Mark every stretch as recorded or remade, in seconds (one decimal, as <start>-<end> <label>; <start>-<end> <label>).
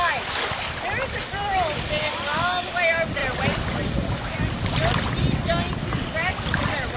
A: 0.0-7.0 recorded